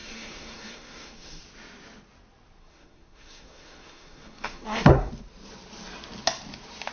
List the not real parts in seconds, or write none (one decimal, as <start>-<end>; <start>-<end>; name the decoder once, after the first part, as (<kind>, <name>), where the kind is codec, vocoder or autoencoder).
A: 0.0-1.4 (codec, SNAC); 2.6-5.1